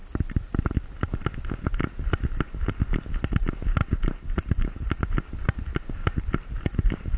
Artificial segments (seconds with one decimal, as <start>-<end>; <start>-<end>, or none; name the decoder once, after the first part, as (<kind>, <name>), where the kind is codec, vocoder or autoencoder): 1.8-3.0 (vocoder, BigVGAN v2); 3.8-4.9; 6.0-7.2